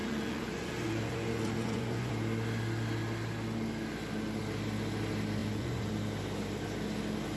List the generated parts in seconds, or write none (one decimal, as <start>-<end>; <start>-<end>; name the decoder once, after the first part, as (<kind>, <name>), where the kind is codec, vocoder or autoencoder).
0.0-2.1 (vocoder, Vocos); 5.4-5.9

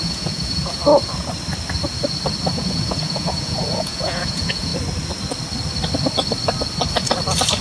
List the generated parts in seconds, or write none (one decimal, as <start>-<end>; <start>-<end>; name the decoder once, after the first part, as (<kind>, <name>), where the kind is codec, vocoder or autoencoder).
0.0-0.8 (vocoder, Vocos); 2.5-4.7

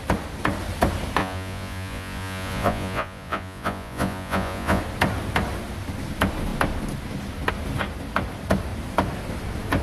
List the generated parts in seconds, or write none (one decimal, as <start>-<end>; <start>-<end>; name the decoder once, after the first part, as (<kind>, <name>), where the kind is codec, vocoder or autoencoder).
1.2-4.8 (vocoder, Vocos)

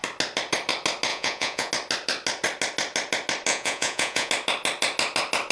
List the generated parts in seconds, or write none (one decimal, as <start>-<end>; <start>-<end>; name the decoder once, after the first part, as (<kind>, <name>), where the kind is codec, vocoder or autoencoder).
1.1-1.7 (vocoder, Vocos); 3.5-4.3

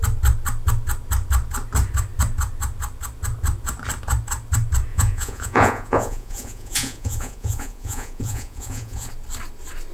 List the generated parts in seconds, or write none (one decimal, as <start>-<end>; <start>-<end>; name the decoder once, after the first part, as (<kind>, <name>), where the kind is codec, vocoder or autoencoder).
4.9-9.1 (vocoder, Vocos)

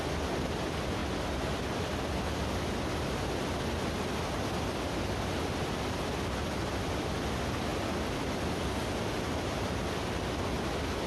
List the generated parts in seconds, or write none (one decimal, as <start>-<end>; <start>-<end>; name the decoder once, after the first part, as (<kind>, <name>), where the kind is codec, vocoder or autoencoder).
none

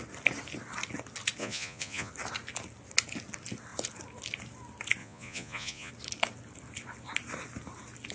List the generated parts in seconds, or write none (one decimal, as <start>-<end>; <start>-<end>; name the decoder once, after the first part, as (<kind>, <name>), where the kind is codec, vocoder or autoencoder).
1.4-2.1 (vocoder, Vocos); 5.0-5.9